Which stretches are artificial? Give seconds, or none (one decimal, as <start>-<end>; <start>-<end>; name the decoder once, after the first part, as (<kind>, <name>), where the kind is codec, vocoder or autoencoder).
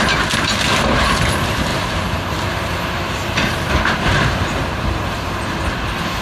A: 1.7-5.4 (vocoder, BigVGAN v2)